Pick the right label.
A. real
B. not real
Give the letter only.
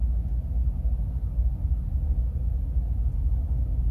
A